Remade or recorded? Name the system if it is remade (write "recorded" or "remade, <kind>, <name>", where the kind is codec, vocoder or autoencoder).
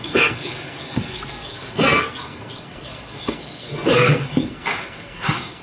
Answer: remade, codec, SNAC